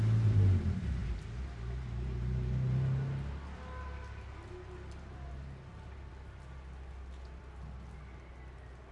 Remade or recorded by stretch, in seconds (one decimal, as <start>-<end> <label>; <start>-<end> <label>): 0.0-8.9 recorded